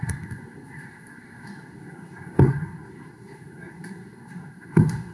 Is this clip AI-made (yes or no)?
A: yes